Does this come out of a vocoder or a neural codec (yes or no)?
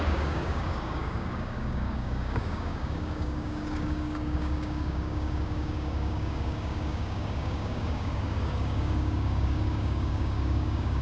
yes